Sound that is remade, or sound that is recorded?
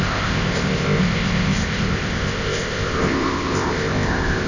remade